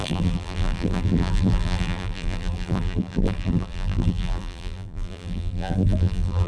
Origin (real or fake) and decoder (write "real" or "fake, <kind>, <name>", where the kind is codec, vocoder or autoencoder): fake, vocoder, BigVGAN v2